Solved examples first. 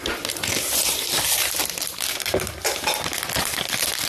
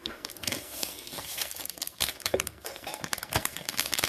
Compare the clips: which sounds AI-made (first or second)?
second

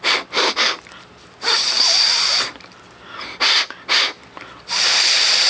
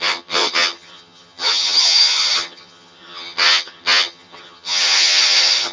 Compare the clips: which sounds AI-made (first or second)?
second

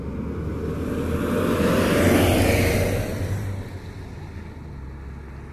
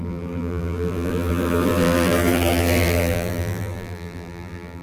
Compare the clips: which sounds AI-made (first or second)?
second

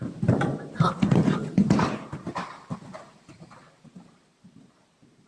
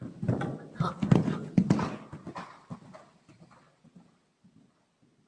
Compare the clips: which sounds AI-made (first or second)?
first